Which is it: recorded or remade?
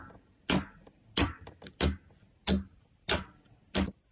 recorded